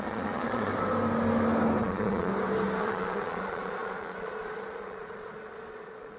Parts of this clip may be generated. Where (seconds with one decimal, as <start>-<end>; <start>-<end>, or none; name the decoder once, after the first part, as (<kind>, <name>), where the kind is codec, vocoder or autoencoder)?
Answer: 0.0-0.7 (vocoder, Vocos); 1.8-2.3; 2.8-6.2

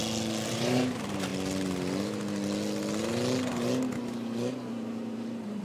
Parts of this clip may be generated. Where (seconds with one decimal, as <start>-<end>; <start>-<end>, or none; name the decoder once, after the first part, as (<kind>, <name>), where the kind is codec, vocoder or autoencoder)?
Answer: 0.5-1.3 (vocoder, BigVGAN v2); 4.7-5.6